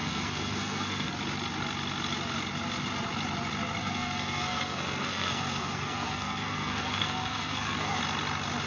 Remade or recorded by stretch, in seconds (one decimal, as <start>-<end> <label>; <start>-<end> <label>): 0.0-1.1 remade; 1.1-3.8 recorded; 3.8-8.0 remade; 8.0-8.7 recorded